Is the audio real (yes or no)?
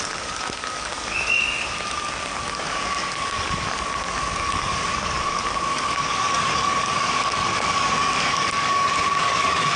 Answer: no